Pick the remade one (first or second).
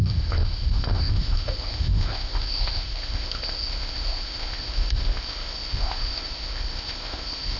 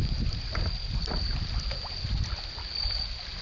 first